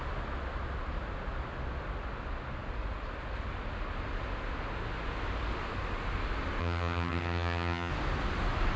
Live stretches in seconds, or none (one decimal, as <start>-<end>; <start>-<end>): 0.0-6.6; 7.9-8.8